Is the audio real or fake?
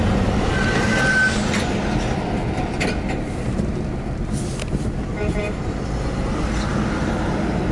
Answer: real